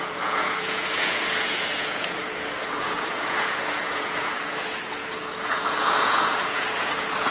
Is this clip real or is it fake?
fake